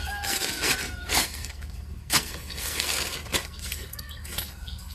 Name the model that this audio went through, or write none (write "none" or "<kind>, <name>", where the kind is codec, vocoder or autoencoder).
codec, SNAC